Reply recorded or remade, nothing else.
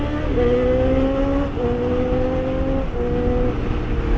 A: recorded